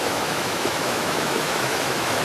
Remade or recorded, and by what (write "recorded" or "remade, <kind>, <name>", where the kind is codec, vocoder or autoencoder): remade, autoencoder, DAC-VAE